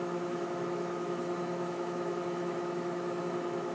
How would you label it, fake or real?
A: fake